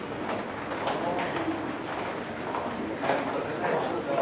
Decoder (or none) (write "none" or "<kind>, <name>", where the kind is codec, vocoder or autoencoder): none